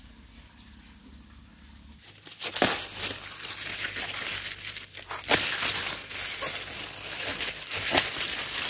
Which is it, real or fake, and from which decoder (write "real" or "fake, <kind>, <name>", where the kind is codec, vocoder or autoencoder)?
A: real